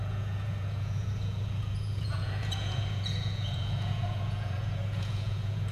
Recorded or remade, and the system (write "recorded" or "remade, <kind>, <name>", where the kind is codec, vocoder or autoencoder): remade, vocoder, Vocos